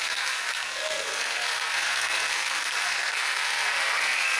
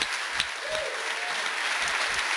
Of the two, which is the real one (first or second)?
second